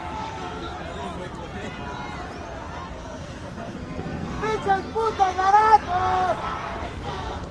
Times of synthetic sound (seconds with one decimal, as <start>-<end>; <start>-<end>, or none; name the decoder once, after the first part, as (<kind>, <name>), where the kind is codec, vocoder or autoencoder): 0.0-0.7 (codec, SNAC); 2.9-5.6; 6.8-7.5